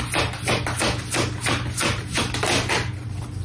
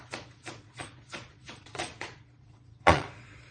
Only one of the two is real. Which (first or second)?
first